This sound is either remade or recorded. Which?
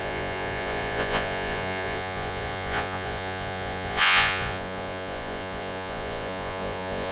remade